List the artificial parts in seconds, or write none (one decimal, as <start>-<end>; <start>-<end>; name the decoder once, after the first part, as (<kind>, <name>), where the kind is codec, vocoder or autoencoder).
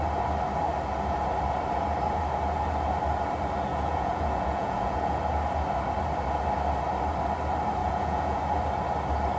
3.7-5.2 (vocoder, Vocos); 7.8-8.4